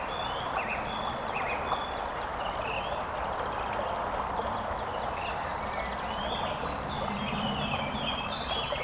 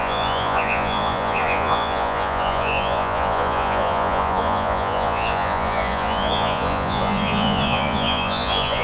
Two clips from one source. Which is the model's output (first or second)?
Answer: second